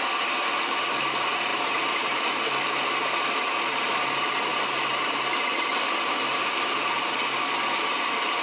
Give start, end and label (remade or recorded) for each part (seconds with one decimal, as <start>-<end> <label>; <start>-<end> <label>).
0.0-8.4 recorded

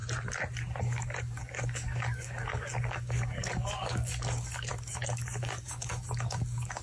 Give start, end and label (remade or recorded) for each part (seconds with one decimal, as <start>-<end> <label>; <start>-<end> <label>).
0.0-0.8 recorded; 0.8-6.8 remade

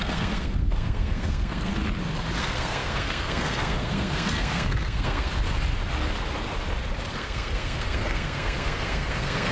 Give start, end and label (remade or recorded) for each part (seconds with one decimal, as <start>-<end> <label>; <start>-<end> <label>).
0.0-1.7 remade; 1.7-2.4 recorded; 2.4-5.3 remade; 5.3-7.1 recorded; 7.1-9.5 remade

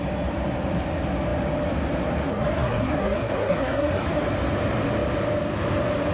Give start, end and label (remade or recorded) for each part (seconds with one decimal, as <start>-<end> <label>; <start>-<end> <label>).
0.0-2.3 recorded; 2.3-4.2 remade; 4.2-6.1 recorded

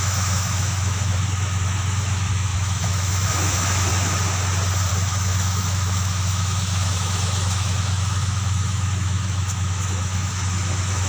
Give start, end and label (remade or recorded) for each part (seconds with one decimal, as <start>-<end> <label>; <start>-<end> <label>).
0.0-3.9 remade; 3.9-4.9 recorded; 4.9-11.1 remade

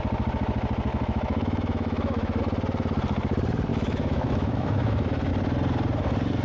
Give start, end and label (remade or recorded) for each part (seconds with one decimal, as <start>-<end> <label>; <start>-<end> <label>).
0.0-0.9 recorded; 0.9-2.4 remade; 2.4-3.7 recorded; 3.7-5.3 remade; 5.3-6.4 recorded

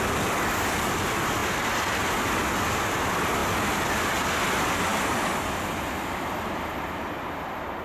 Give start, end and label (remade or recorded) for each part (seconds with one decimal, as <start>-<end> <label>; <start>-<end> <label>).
0.0-7.8 recorded